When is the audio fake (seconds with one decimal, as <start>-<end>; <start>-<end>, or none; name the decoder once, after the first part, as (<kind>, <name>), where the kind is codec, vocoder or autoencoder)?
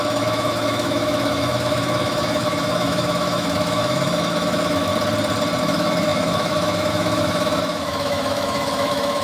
0.0-4.9 (autoencoder, DAC-VAE); 5.6-9.2